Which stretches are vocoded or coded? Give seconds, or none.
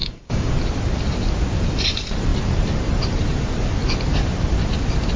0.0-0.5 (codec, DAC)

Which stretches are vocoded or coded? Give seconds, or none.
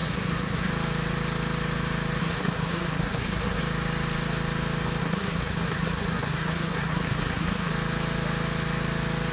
0.0-0.7 (codec, SNAC); 2.2-3.6; 5.0-7.7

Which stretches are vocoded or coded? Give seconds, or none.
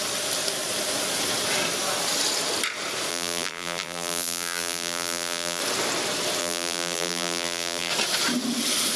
3.1-5.6 (vocoder, BigVGAN v2); 6.4-7.9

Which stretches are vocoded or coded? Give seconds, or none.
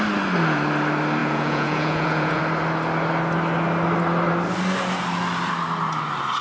1.2-2.4 (vocoder, Vocos)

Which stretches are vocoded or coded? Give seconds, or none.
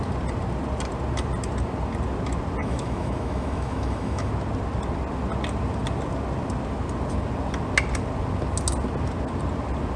2.6-4.3 (autoencoder, DAC-VAE)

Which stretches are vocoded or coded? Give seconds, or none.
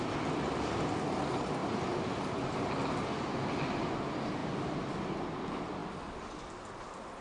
none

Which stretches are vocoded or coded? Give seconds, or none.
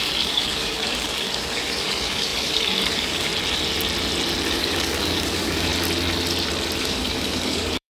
0.0-3.3 (codec, DAC); 4.5-5.7; 6.8-7.9